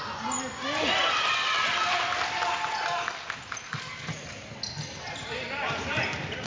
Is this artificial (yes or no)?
no